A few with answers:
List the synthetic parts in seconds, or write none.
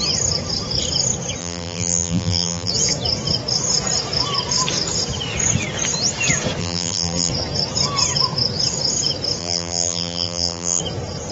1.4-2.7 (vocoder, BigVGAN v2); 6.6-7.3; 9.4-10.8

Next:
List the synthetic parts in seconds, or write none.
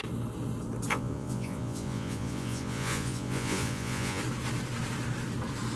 0.9-4.2 (vocoder, Vocos)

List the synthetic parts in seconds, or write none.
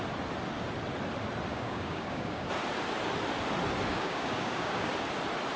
1.5-2.5 (codec, DAC); 3.9-4.9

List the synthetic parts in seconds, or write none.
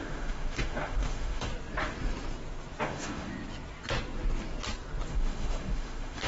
0.0-1.5 (autoencoder, DAC-VAE); 2.8-3.3; 5.1-6.3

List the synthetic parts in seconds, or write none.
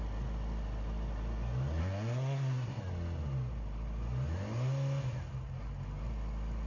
1.8-2.8 (codec, SNAC)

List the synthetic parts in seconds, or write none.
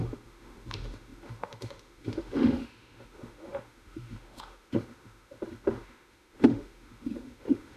0.0-7.8 (autoencoder, DAC-VAE)